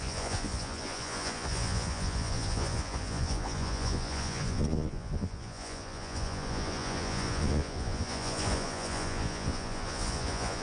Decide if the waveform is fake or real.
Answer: fake